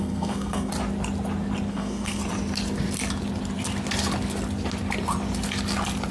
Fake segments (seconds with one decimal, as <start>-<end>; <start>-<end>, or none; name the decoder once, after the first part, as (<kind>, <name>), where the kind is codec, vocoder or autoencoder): 0.0-0.7 (codec, SNAC); 1.7-2.2